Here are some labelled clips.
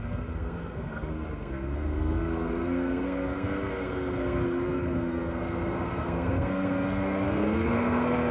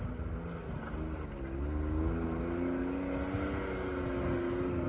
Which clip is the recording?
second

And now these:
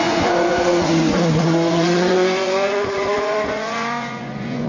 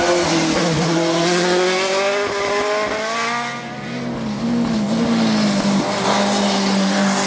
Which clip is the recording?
second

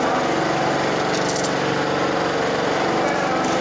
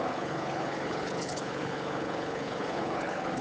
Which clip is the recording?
first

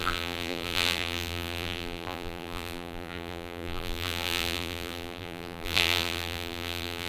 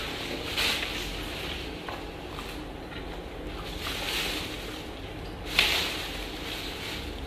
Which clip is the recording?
second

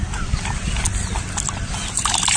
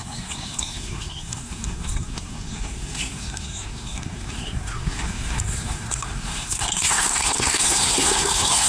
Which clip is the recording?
first